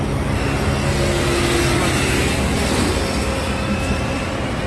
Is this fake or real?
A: real